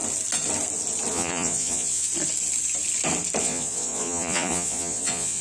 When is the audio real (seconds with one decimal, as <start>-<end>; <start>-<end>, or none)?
0.0-1.1; 2.1-3.4